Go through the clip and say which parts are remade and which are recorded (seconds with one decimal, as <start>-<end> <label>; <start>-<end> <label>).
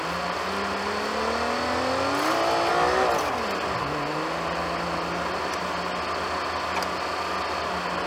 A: 0.0-8.1 recorded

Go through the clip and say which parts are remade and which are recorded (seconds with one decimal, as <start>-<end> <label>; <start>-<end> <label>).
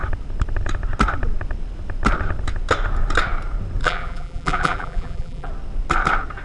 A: 0.0-3.8 recorded; 3.8-5.5 remade; 5.5-6.4 recorded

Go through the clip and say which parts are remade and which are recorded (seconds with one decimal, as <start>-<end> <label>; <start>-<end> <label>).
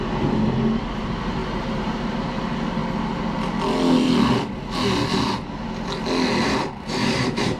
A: 0.0-2.8 remade; 2.8-6.4 recorded; 6.4-7.6 remade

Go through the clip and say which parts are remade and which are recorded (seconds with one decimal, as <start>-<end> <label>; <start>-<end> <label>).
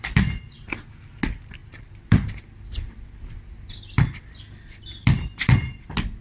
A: 0.0-1.6 recorded; 1.6-5.3 remade; 5.3-6.2 recorded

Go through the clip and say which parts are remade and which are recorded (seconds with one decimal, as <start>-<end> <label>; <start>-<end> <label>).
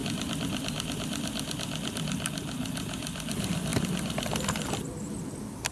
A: 0.0-5.7 recorded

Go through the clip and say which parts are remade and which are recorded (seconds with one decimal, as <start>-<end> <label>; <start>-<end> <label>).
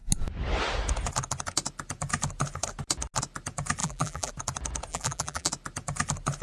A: 0.0-3.8 recorded; 3.8-4.3 remade; 4.3-4.9 recorded; 4.9-5.5 remade; 5.5-6.4 recorded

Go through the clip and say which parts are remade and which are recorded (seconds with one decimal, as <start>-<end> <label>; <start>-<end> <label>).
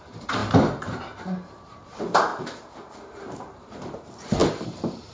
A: 0.0-2.3 remade; 2.3-3.3 recorded; 3.3-5.1 remade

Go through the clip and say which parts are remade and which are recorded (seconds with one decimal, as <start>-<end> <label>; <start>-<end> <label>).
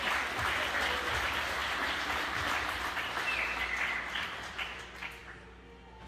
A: 0.0-1.6 recorded; 1.6-4.8 remade; 4.8-6.1 recorded